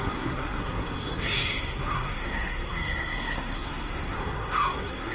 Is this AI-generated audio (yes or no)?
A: yes